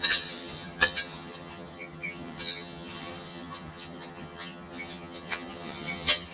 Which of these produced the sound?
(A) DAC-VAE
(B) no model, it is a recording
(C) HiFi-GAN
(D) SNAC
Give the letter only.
C